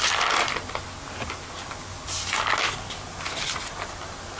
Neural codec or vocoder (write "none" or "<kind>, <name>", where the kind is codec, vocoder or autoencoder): none